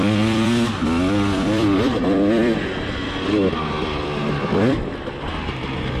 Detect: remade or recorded remade